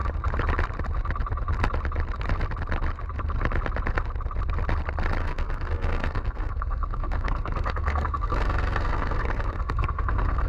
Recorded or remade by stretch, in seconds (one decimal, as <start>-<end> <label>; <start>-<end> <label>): 0.0-5.2 recorded; 5.2-10.5 remade